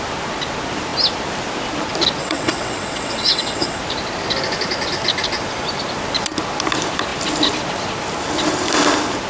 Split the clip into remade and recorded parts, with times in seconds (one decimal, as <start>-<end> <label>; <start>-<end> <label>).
0.0-2.2 recorded; 2.2-3.8 remade; 3.8-9.3 recorded